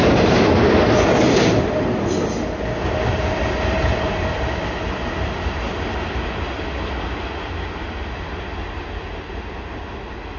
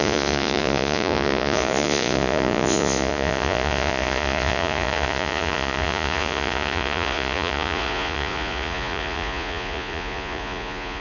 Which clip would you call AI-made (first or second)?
second